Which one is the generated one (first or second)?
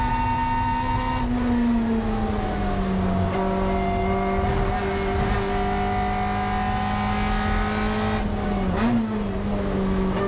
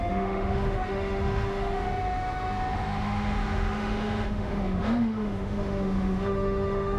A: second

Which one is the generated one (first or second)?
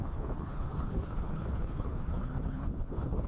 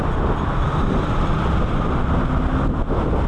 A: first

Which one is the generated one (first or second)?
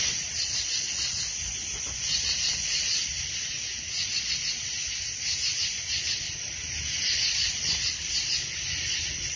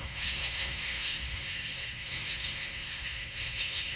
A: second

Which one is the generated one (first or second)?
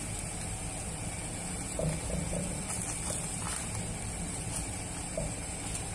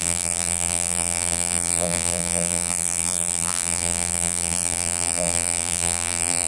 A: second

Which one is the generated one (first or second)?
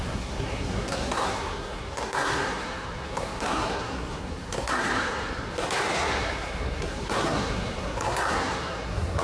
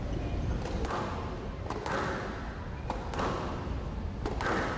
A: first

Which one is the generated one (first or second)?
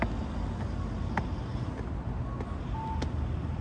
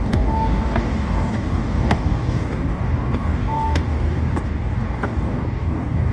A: second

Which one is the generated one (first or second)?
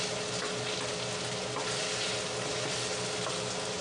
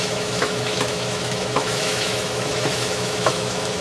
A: second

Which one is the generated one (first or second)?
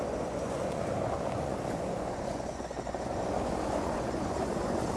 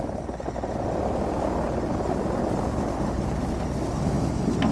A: first